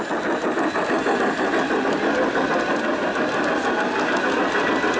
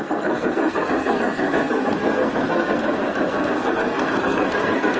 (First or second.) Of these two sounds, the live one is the first